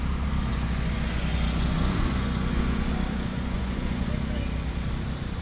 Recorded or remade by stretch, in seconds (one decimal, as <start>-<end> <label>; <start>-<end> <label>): 0.0-0.5 recorded; 0.5-2.9 remade; 2.9-3.3 recorded; 3.3-4.1 remade; 4.1-5.4 recorded